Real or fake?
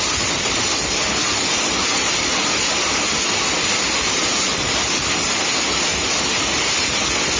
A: real